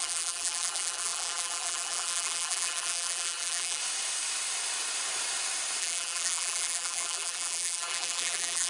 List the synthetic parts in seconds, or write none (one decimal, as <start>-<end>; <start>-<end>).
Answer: 0.0-3.8; 5.8-8.7

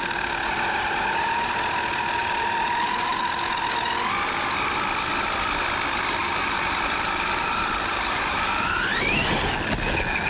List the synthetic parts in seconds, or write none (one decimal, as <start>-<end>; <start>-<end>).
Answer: 2.2-3.2; 6.2-9.1

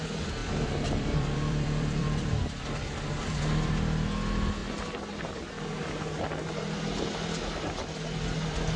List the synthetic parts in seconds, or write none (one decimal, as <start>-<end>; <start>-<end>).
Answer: 0.4-3.2; 4.6-5.2

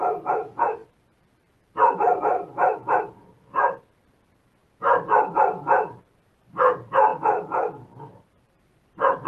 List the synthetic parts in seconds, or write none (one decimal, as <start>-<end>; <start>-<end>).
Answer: 0.0-4.6; 5.2-9.3

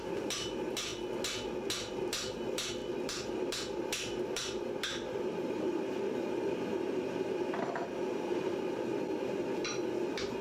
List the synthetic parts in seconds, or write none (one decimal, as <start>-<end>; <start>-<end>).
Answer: 0.0-0.9; 1.9-10.4